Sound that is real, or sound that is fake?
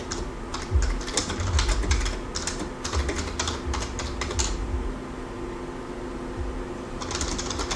real